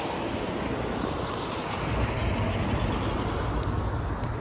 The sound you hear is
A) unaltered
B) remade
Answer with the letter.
A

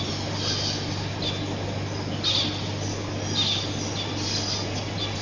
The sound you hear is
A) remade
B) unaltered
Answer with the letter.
B